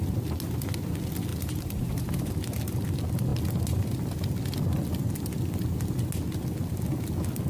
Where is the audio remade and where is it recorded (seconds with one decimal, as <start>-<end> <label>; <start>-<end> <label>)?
0.0-1.3 recorded; 1.3-2.3 remade; 2.3-7.5 recorded